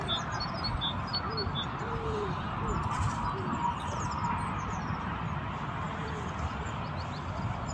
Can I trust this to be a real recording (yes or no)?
yes